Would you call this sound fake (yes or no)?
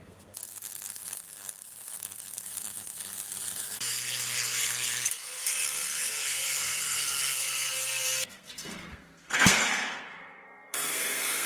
yes